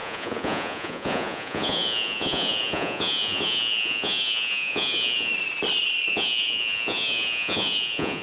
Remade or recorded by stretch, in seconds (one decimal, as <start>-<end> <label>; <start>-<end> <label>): 0.0-5.3 remade; 5.3-6.1 recorded; 6.1-8.2 remade